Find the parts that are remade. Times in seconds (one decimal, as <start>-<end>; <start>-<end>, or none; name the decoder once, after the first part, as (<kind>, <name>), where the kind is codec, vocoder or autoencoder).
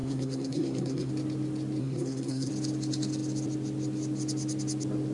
0.0-1.1 (codec, SNAC); 1.8-2.5